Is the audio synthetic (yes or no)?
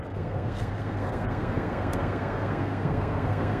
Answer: yes